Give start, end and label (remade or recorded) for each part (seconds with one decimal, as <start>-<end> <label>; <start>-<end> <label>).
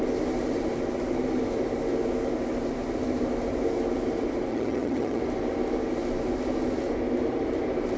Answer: 0.0-4.5 recorded; 4.5-5.2 remade; 5.2-8.0 recorded